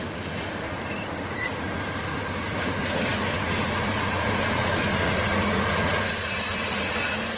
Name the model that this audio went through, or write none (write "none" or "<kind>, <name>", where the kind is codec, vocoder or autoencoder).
vocoder, Vocos